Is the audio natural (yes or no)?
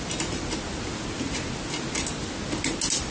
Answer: yes